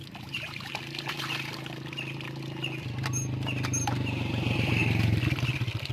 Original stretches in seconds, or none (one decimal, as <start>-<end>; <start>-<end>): 0.0-5.9